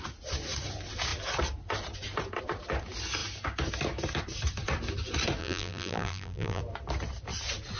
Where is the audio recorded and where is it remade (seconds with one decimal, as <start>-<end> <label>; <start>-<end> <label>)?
0.0-5.4 recorded; 5.4-6.6 remade; 6.6-7.8 recorded